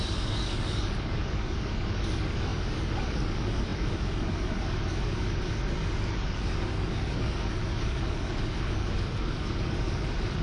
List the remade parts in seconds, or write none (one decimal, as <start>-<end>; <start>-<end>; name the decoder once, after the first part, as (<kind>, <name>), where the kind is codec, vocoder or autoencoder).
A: 0.0-10.4 (codec, DAC)